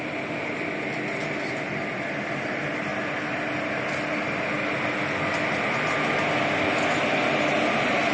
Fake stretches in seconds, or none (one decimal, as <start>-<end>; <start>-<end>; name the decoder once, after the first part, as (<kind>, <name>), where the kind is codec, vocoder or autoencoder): none